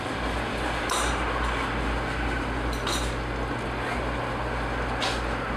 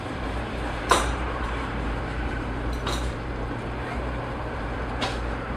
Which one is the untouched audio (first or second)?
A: first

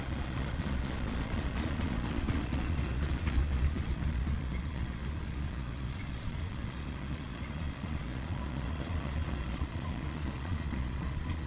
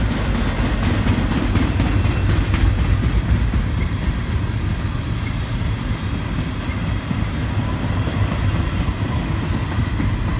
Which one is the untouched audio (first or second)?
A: second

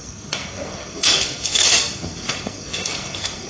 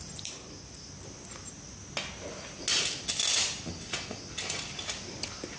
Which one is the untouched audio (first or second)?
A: second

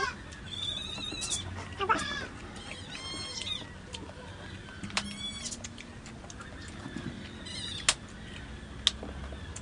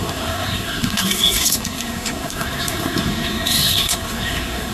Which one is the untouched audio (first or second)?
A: first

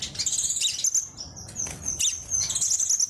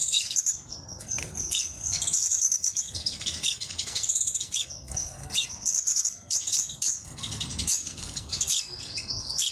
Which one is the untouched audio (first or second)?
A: first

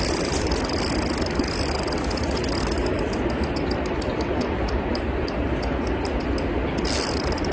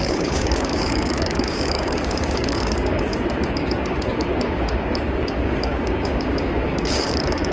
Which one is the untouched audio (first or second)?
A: first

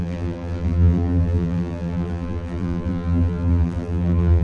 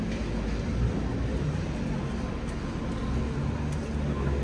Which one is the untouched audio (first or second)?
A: second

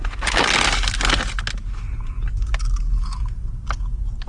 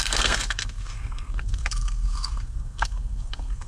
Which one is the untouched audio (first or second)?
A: first